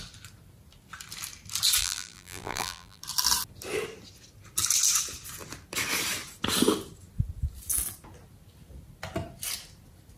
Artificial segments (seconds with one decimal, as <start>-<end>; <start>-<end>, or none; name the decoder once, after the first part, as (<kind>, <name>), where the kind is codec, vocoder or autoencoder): 1.8-3.0 (vocoder, BigVGAN v2)